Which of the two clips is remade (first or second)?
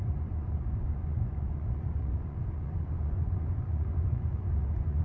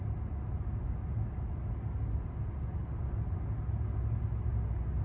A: first